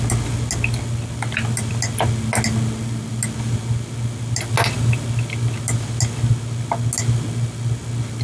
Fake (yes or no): no